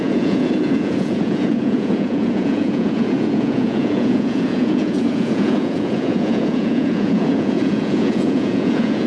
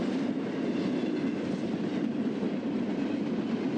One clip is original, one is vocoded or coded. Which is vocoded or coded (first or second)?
first